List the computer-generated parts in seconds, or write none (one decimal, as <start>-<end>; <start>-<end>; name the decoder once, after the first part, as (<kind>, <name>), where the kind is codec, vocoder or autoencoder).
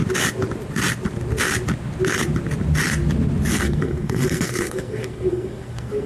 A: 3.5-6.1 (codec, SNAC)